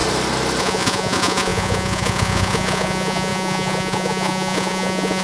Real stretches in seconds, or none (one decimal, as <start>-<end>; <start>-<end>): 0.0-0.6